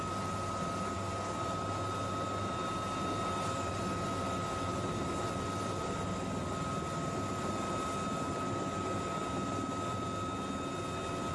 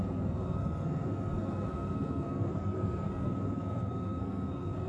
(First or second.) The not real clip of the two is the second